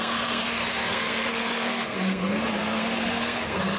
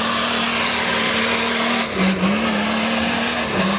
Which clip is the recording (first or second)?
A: second